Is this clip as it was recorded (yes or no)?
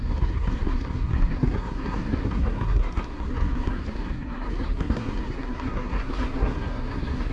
no